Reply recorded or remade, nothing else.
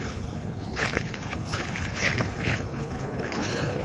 remade